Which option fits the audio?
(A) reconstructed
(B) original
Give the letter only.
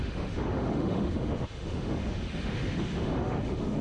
A